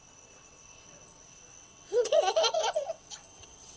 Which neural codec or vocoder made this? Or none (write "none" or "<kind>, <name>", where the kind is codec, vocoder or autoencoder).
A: vocoder, WaveNeXt